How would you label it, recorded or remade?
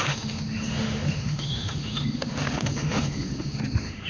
remade